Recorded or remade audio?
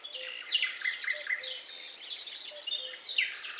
recorded